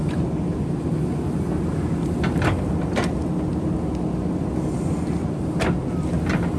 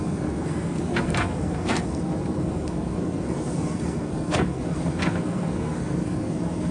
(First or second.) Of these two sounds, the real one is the first